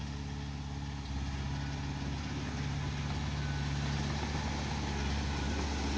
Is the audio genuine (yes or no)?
yes